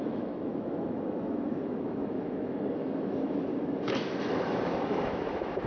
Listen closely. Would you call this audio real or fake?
fake